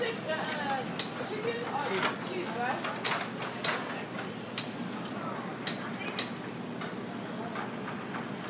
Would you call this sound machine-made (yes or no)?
no